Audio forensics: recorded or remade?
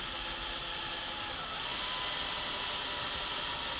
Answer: recorded